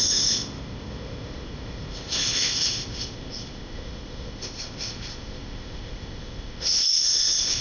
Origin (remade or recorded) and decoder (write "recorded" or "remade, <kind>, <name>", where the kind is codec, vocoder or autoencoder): remade, codec, ZipCodec